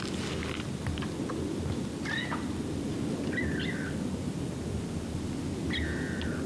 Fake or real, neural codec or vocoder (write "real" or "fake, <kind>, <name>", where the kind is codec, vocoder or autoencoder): real